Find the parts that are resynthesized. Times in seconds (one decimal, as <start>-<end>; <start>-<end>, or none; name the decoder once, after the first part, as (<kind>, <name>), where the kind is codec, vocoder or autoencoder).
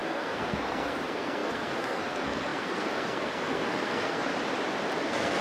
0.0-4.3 (codec, SNAC); 5.0-5.4